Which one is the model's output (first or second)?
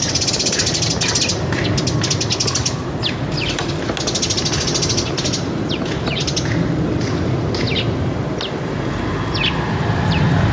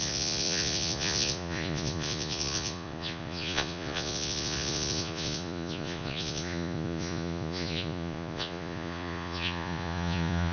second